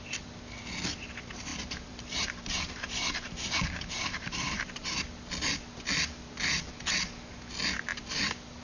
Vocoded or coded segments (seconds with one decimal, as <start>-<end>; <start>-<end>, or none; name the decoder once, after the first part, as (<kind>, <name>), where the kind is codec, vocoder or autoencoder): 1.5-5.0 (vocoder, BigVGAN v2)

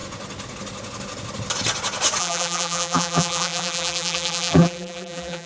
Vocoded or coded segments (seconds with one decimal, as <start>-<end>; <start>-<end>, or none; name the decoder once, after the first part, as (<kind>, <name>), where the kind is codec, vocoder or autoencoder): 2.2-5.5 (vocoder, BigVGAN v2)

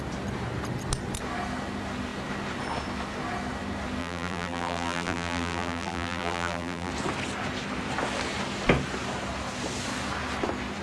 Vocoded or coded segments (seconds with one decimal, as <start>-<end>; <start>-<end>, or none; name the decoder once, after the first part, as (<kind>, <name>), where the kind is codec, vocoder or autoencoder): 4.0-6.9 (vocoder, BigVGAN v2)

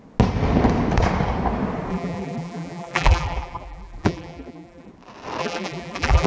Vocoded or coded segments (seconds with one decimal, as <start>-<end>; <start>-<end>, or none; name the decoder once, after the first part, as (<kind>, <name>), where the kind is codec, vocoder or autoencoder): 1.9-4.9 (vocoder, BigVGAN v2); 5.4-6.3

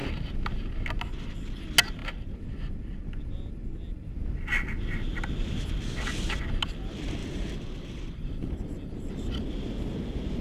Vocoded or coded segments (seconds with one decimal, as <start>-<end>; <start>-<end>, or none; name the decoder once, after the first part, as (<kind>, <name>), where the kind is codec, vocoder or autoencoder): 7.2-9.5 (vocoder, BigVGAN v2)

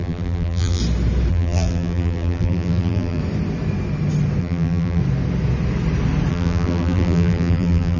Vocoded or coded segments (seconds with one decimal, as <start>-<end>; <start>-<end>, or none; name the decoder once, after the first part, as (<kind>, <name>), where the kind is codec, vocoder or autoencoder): 0.0-0.8 (vocoder, BigVGAN v2); 1.3-3.2; 4.4-5.0; 6.3-8.0

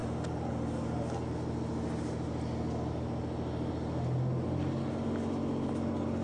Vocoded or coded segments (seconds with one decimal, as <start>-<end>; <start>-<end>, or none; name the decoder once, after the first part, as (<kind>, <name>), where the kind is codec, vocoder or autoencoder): none

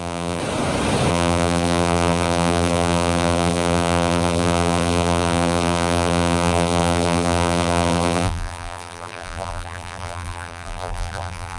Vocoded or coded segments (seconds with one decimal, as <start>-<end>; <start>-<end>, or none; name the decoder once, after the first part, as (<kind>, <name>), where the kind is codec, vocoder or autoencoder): 0.0-0.4 (vocoder, BigVGAN v2); 1.1-11.6